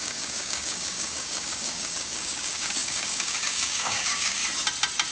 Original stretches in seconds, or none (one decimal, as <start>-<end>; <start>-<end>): 4.4-5.1